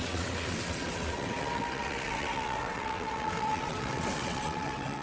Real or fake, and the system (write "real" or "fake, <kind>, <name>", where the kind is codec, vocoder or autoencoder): fake, vocoder, WaveNeXt